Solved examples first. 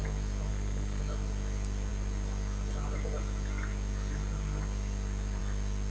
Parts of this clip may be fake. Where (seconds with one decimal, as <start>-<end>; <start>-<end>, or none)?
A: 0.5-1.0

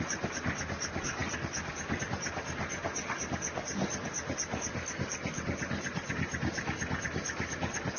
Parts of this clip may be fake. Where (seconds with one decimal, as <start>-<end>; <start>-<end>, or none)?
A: none

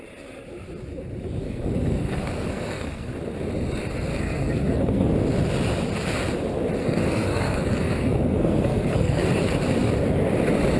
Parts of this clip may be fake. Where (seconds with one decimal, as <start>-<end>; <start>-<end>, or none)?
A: 1.4-3.1; 4.1-5.1; 6.8-9.3

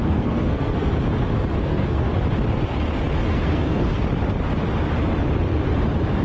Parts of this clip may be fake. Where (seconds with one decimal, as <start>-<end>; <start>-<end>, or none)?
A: 0.0-0.9; 1.6-2.1; 3.3-4.0

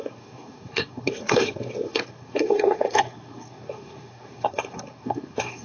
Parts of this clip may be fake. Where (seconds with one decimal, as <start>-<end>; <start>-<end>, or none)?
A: 0.0-5.6